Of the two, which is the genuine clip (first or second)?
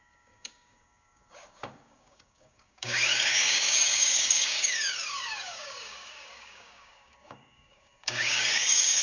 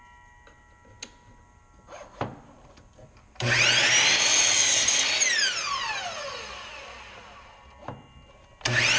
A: second